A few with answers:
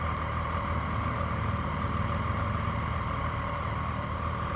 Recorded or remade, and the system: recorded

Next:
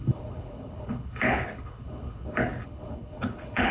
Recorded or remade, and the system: remade, codec, HILCodec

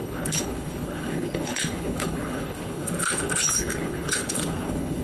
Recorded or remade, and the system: remade, codec, HILCodec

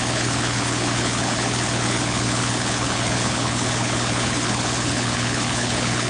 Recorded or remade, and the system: remade, codec, HILCodec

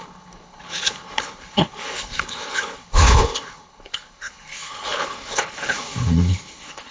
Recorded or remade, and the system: remade, codec, HILCodec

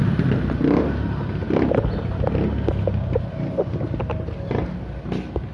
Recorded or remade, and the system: recorded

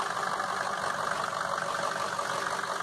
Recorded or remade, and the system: recorded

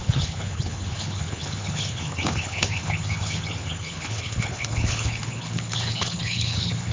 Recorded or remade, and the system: remade, codec, HILCodec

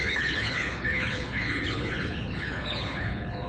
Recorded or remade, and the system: remade, codec, HILCodec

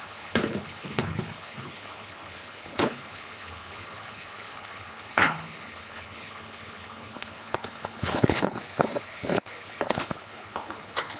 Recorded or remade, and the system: remade, codec, HILCodec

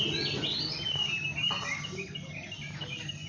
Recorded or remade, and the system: recorded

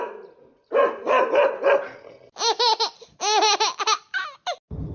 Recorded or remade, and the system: recorded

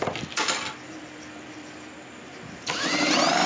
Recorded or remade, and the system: recorded